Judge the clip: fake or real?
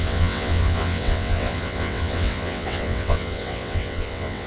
fake